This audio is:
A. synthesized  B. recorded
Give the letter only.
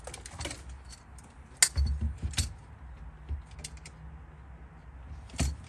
B